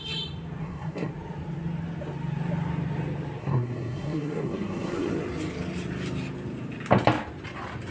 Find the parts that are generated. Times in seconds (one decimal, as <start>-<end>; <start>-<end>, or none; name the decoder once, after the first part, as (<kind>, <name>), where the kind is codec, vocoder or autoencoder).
0.6-1.1 (codec, SNAC); 3.4-5.1